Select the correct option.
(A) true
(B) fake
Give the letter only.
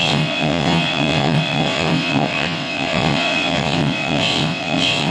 B